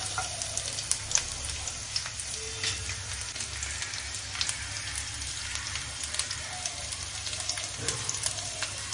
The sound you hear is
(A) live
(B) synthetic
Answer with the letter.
A